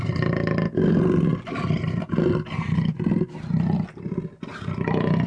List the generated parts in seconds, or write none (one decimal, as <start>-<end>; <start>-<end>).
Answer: none